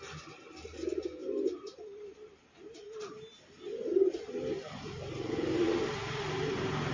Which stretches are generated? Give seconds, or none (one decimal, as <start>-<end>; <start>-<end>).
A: none